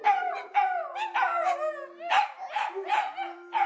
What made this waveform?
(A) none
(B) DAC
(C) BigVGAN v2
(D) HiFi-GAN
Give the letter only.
C